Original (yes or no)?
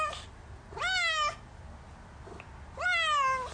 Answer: yes